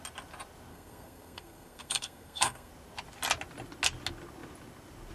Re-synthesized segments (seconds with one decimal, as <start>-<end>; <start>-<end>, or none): 0.7-2.7